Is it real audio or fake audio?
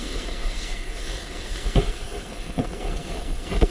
fake